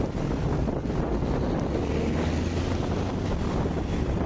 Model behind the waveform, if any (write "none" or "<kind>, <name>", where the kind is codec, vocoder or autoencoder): none